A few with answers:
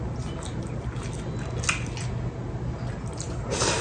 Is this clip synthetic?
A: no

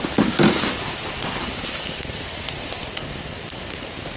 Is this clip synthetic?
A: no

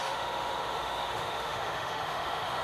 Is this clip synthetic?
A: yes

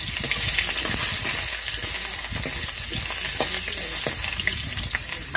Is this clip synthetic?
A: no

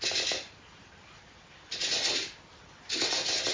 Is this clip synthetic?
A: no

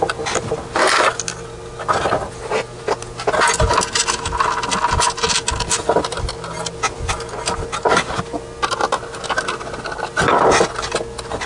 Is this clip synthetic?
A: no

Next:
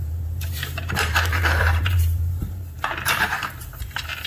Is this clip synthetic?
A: yes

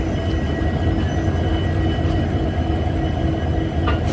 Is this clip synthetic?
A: no